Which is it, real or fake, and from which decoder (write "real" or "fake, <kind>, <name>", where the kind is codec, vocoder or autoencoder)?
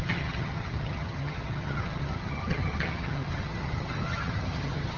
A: fake, vocoder, HiFi-GAN